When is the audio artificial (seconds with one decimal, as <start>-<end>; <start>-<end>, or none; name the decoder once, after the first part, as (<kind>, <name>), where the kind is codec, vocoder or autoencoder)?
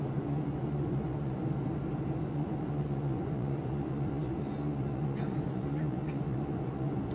0.0-1.4 (vocoder, Vocos); 2.3-7.1